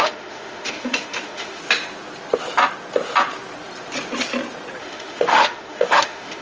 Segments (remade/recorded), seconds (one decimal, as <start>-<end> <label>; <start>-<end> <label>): 0.0-1.6 remade; 1.6-4.8 recorded; 4.8-6.4 remade